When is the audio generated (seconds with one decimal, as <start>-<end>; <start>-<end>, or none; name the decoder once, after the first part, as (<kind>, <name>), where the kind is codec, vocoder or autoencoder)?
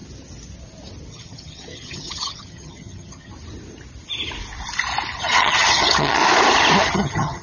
1.1-3.3 (vocoder, HiFi-GAN); 5.2-6.2; 6.9-7.4